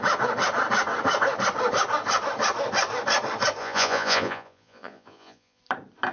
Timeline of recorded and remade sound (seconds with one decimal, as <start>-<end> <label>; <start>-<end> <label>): 0.0-3.6 recorded; 3.6-5.6 remade; 5.6-6.1 recorded

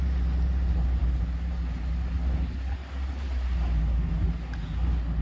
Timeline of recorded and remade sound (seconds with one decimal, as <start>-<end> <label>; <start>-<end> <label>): 0.0-5.2 recorded

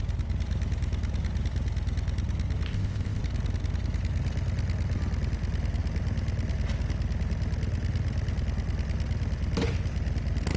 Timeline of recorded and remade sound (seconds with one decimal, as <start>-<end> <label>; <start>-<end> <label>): 0.0-2.7 recorded; 2.7-3.2 remade; 3.2-10.6 recorded